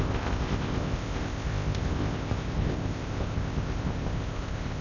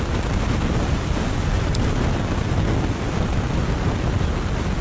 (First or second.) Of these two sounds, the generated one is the first